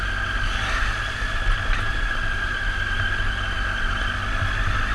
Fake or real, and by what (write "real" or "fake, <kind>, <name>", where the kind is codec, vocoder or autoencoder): real